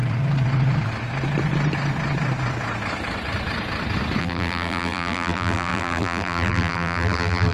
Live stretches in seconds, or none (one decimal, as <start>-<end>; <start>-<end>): 0.0-4.2